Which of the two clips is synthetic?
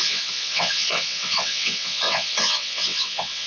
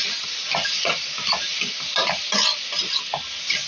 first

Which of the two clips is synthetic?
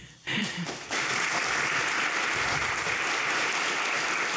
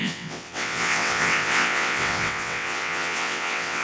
second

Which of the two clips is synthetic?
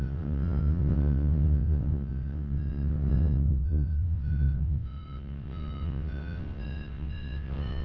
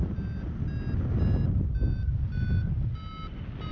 first